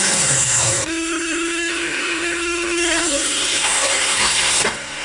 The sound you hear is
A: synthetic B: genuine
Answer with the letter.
A